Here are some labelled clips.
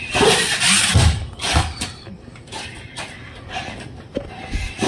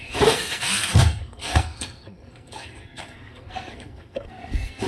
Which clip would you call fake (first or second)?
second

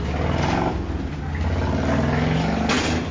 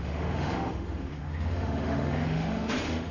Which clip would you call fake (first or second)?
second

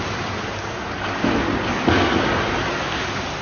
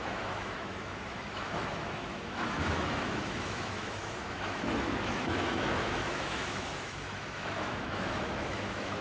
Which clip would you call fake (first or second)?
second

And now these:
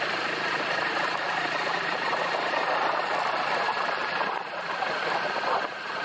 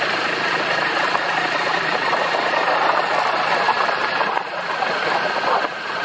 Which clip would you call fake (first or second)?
first